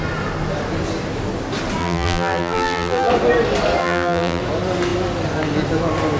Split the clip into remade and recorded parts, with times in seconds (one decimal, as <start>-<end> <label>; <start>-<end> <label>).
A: 0.0-1.8 recorded; 1.8-3.1 remade; 3.1-3.8 recorded; 3.8-4.4 remade; 4.4-6.2 recorded